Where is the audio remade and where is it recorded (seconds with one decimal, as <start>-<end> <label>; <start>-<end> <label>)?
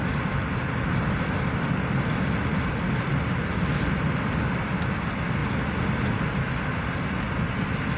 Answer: 0.0-8.0 recorded